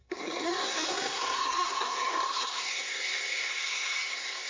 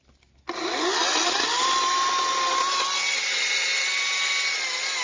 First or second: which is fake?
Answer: first